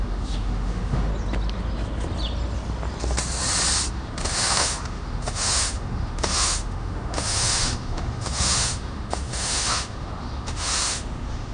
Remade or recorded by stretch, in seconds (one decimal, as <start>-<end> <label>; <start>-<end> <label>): 0.0-1.1 remade; 1.1-3.9 recorded; 3.9-11.5 remade